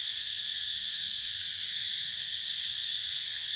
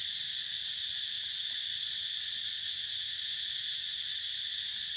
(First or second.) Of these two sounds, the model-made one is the first